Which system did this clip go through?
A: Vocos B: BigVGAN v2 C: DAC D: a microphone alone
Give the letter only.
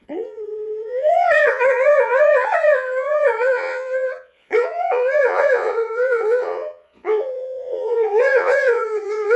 A